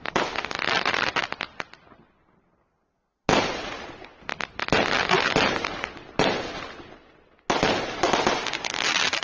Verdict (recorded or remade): recorded